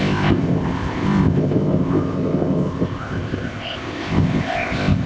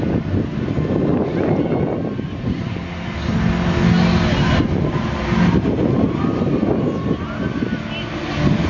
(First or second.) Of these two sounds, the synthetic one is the first